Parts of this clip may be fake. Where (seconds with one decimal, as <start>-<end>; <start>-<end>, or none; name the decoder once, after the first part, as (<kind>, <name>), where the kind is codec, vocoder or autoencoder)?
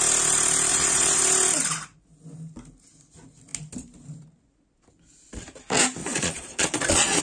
0.7-1.2 (vocoder, Vocos); 6.0-7.2